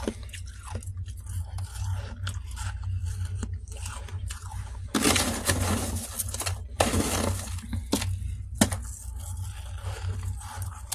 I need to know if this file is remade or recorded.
recorded